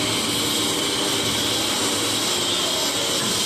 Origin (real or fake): real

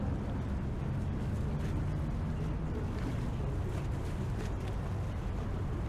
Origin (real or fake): fake